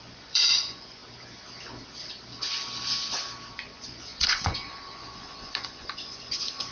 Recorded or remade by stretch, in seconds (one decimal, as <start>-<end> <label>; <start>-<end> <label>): 0.0-1.0 remade; 1.0-3.5 recorded; 3.5-6.7 remade